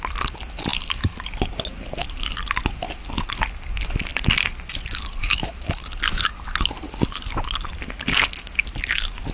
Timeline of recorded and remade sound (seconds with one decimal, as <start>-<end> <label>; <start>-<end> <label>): 0.0-0.7 recorded; 0.7-1.4 remade; 1.4-4.1 recorded; 4.1-6.0 remade; 6.0-9.3 recorded